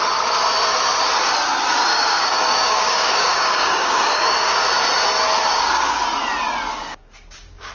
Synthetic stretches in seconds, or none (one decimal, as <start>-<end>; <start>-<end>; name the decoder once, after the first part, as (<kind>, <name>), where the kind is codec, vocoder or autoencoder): 1.9-4.6 (codec, DAC); 5.5-6.0; 6.7-7.7